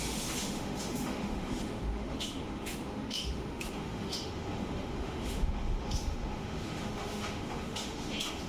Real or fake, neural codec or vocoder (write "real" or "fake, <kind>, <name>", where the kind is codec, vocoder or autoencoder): fake, autoencoder, DAC-VAE